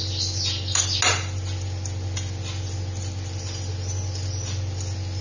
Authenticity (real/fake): real